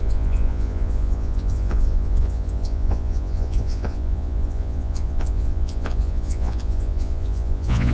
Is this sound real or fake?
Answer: fake